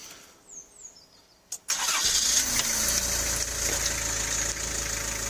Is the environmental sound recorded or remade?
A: recorded